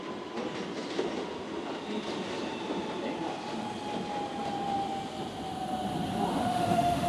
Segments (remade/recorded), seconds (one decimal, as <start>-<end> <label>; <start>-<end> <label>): 0.0-6.3 recorded; 6.3-7.1 remade